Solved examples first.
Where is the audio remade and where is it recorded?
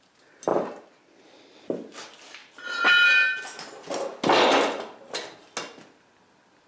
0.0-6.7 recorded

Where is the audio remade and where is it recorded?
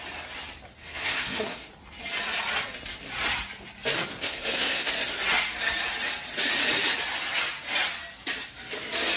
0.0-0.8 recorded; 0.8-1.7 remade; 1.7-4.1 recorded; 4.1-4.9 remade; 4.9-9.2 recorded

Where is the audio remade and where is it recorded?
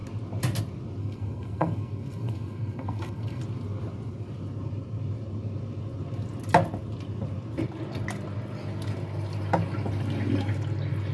0.0-1.0 recorded; 1.0-3.4 remade; 3.4-11.1 recorded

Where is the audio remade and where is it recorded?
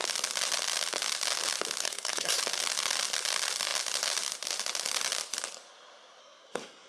0.0-1.8 recorded; 1.8-2.4 remade; 2.4-6.2 recorded; 6.2-6.9 remade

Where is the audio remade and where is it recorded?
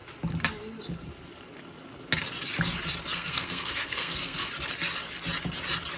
0.0-3.1 recorded; 3.1-4.5 remade; 4.5-6.0 recorded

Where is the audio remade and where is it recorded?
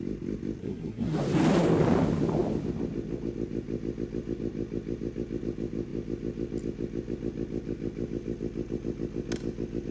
0.0-0.6 recorded; 0.6-1.2 remade; 1.2-9.9 recorded